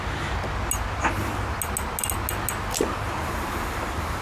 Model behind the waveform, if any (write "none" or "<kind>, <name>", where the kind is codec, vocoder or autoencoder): none